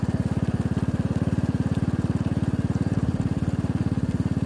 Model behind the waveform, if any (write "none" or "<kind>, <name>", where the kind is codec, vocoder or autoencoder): none